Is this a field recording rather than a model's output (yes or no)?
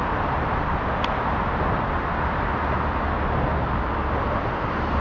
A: yes